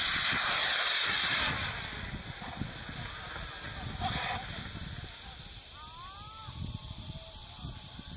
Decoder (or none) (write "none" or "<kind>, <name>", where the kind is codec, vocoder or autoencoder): none